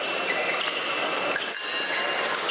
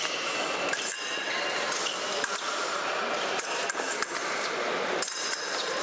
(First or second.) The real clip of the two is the first